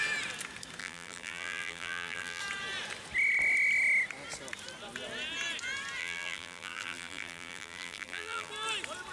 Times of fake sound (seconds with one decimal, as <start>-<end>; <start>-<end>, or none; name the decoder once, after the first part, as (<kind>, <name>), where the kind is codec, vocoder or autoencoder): 0.8-2.4 (vocoder, BigVGAN v2); 6.0-8.5